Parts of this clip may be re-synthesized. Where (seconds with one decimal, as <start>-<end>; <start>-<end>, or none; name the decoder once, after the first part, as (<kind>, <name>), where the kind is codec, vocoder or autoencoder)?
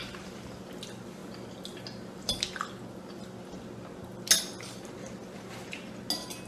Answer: none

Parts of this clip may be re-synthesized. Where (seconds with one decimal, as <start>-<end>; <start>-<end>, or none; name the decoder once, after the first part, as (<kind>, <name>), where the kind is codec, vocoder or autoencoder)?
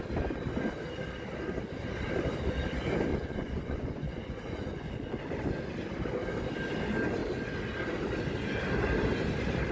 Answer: 3.1-4.9 (vocoder, Vocos)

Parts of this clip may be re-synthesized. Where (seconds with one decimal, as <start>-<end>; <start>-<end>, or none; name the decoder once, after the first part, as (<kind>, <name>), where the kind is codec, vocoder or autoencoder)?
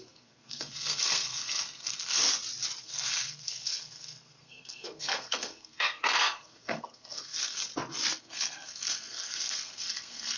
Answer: 0.0-2.2 (codec, SNAC); 2.8-7.7; 8.2-10.4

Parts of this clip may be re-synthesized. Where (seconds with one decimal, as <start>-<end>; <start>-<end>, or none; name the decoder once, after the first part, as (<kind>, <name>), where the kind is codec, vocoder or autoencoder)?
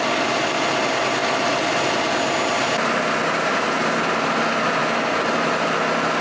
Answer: none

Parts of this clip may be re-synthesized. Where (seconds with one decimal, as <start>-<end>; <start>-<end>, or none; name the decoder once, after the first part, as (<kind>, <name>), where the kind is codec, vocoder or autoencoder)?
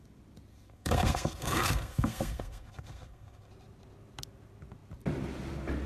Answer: 0.5-3.5 (codec, SNAC)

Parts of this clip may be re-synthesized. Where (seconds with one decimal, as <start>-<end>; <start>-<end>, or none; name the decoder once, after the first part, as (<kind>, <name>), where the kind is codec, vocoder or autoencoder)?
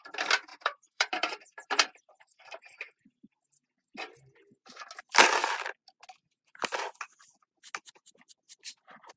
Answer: 0.5-3.4 (vocoder, BigVGAN v2)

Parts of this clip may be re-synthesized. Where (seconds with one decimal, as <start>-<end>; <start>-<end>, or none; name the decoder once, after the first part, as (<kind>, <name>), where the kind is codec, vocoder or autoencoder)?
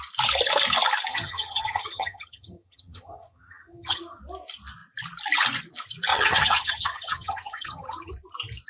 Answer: 1.1-4.2 (vocoder, HiFi-GAN); 6.1-8.1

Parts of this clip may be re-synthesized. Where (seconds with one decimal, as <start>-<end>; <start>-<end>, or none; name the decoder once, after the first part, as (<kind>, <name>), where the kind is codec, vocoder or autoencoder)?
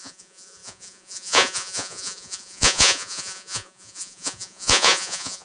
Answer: 0.0-5.4 (vocoder, Vocos)